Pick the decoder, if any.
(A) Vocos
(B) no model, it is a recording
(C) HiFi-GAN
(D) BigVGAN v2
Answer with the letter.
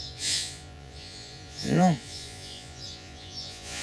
A